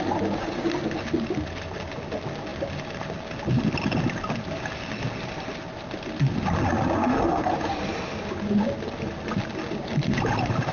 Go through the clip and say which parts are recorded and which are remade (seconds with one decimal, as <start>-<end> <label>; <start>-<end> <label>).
0.0-7.0 recorded; 7.0-7.5 remade; 7.5-10.7 recorded